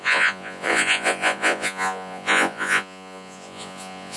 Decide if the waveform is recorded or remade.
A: remade